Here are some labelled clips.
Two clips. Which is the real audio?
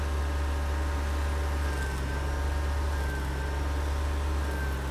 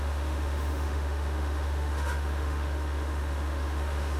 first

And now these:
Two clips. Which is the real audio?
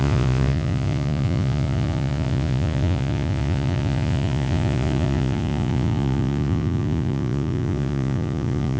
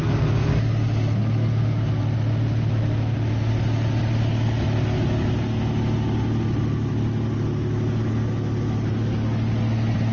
second